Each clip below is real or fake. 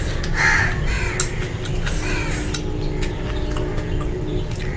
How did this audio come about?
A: real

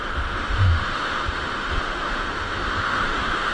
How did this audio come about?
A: fake